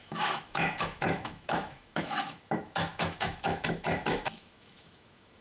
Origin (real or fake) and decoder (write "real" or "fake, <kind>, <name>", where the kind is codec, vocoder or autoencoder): fake, autoencoder, DAC-VAE